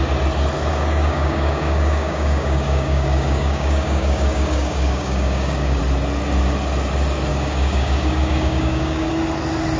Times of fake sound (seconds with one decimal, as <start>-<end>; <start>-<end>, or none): 0.7-5.8; 7.3-9.1